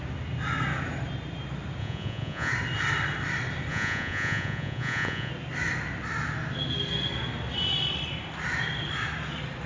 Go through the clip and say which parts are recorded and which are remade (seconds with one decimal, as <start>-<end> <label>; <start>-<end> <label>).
0.0-1.8 recorded; 1.8-2.5 remade; 2.5-3.7 recorded; 3.7-5.3 remade; 5.3-9.7 recorded

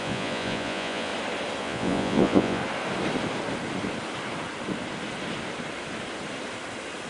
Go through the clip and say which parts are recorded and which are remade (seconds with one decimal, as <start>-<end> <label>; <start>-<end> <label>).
0.0-1.1 remade; 1.1-1.6 recorded; 1.6-2.6 remade; 2.6-7.1 recorded

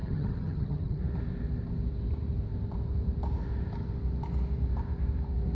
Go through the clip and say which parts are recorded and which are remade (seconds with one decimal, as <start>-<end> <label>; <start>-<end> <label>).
0.0-1.0 remade; 1.0-5.5 recorded

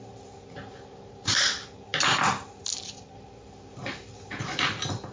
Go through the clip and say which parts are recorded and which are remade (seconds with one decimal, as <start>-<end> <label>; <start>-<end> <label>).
0.0-1.9 remade; 1.9-2.9 recorded; 2.9-5.1 remade

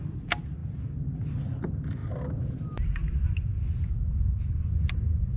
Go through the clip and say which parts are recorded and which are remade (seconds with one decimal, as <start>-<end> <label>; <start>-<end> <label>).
0.0-5.4 recorded